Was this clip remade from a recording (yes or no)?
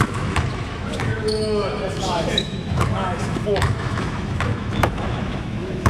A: yes